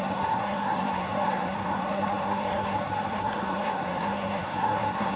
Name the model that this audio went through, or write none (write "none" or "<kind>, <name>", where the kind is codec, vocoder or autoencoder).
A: codec, SNAC